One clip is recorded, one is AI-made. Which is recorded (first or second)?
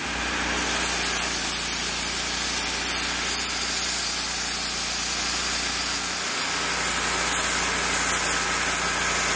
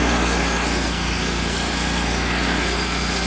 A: first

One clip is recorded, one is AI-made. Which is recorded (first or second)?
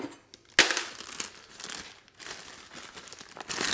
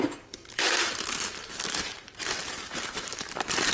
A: first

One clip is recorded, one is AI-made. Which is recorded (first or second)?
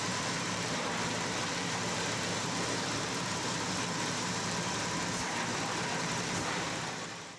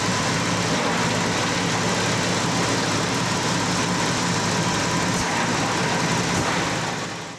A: second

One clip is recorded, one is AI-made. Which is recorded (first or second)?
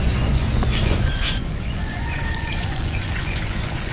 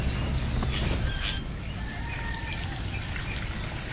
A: second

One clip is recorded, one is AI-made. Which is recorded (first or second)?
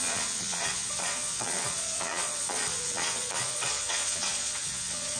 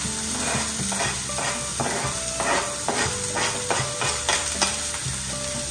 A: second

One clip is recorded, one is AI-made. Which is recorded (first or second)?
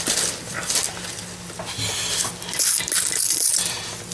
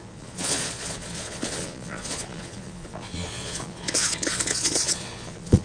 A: first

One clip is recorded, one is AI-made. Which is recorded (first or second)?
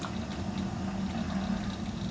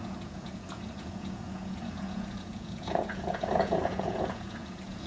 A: first